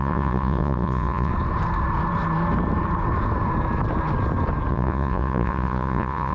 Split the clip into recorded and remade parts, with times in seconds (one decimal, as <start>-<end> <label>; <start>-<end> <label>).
0.0-1.3 remade; 1.3-4.7 recorded; 4.7-6.3 remade